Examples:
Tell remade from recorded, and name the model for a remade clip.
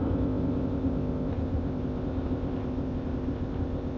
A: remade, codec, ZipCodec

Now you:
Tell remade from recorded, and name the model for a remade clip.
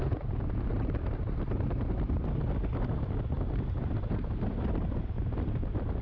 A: recorded